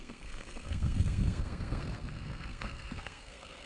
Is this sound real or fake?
fake